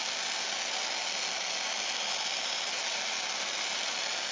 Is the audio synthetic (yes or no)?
no